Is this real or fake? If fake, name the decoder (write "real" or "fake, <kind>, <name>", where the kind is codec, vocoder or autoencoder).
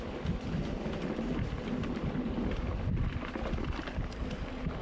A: real